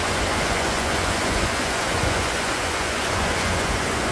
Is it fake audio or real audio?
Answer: fake